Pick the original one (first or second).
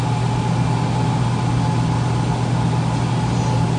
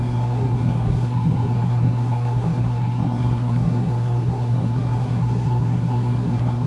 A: first